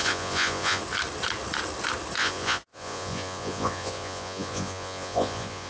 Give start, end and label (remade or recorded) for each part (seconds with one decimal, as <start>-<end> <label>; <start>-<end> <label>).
0.0-0.8 remade; 0.8-2.2 recorded; 2.2-5.7 remade